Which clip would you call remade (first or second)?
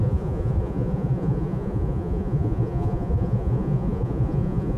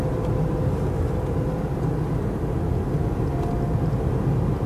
first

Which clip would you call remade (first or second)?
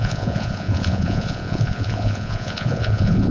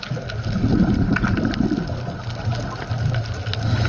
first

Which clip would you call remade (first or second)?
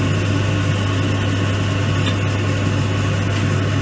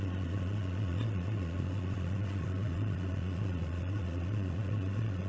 second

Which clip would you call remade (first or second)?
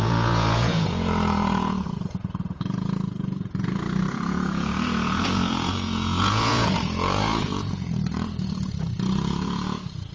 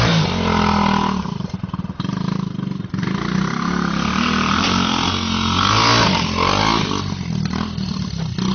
first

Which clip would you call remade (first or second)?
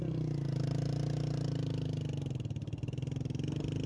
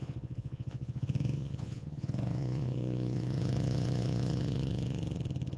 second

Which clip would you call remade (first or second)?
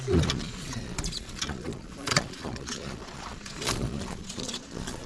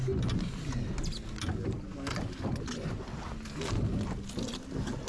first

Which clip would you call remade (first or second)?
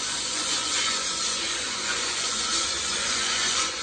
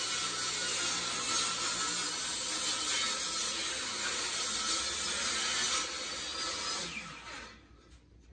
first